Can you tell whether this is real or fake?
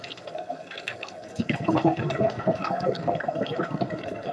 fake